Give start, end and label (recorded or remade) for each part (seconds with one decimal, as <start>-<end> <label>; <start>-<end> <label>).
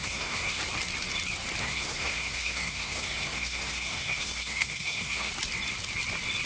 0.0-0.6 remade; 0.6-1.6 recorded; 1.6-5.3 remade; 5.3-6.5 recorded